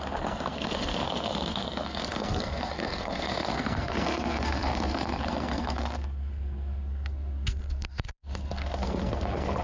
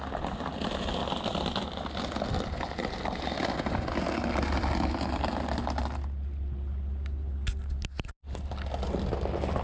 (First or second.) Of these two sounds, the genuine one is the second